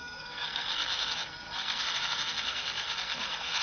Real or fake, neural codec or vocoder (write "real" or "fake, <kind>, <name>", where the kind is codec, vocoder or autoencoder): fake, codec, SNAC